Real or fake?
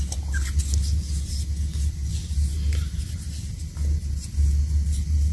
real